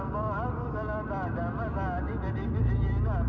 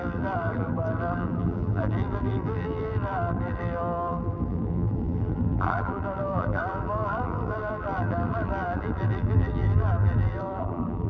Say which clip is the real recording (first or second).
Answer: first